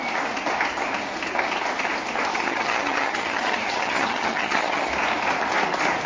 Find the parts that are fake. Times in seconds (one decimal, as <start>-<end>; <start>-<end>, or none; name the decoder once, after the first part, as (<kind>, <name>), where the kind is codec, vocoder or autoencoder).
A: 2.3-4.9 (vocoder, HiFi-GAN)